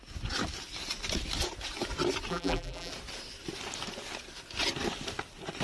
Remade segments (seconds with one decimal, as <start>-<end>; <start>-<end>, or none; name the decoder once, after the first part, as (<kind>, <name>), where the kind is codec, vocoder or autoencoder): 2.3-2.9 (vocoder, BigVGAN v2)

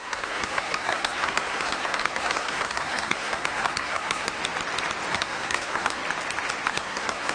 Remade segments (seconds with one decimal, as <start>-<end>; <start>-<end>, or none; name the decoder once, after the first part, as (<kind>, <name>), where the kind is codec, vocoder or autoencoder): 0.0-4.4 (codec, SNAC); 5.1-6.0; 6.7-7.3

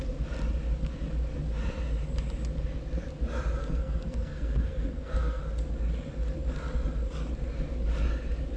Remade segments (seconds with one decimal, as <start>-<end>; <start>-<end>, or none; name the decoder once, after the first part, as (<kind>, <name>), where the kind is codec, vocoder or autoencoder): 3.6-5.4 (codec, SNAC)

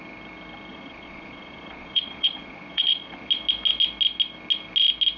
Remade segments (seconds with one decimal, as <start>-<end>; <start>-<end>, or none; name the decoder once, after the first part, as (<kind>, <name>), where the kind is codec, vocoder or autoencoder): 0.7-3.3 (vocoder, Vocos)

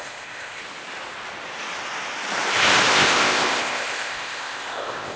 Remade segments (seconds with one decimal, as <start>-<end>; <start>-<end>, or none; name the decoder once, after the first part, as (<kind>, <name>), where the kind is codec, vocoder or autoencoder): 0.0-0.6 (codec, ZipCodec); 2.9-5.2

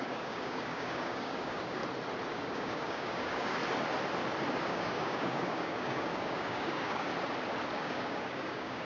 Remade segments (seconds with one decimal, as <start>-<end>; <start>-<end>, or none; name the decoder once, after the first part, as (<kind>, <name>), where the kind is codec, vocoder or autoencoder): 0.0-1.8 (codec, DAC); 2.3-3.6; 4.6-7.1; 7.8-8.8